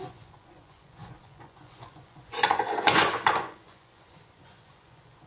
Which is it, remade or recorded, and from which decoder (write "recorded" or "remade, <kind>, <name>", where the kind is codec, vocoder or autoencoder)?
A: remade, vocoder, Vocos